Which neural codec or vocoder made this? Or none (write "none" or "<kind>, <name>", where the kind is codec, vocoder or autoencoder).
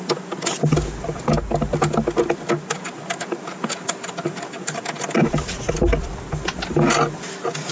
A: none